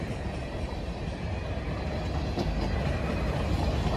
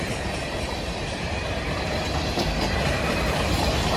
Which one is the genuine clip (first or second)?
first